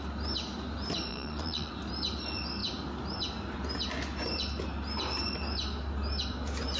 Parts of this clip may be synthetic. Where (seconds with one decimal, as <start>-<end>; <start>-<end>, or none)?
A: 1.1-1.7